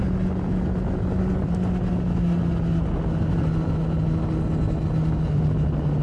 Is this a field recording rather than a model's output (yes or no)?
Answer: yes